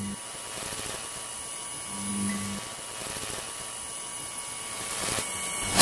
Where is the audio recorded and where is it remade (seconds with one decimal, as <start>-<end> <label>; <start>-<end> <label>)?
0.0-4.1 recorded; 4.1-5.3 remade; 5.3-5.8 recorded